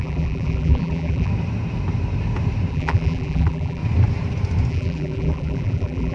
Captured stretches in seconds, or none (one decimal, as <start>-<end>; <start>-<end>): 1.3-2.7; 3.8-4.7